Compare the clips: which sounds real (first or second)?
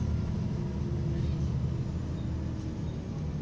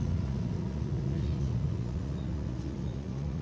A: first